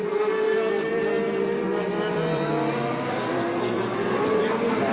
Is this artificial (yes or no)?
yes